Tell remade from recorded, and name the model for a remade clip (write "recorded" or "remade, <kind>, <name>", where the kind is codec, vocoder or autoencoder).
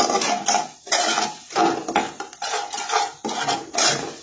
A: recorded